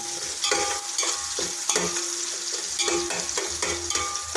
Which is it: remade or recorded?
recorded